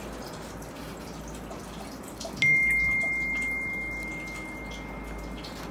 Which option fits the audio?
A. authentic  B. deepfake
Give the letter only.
A